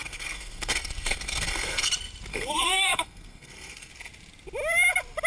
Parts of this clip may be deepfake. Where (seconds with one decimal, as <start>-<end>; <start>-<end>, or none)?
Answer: 0.0-1.9; 2.3-3.9